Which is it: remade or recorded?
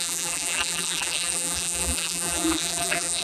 remade